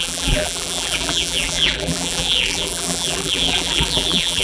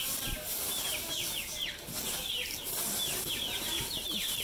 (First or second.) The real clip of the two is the second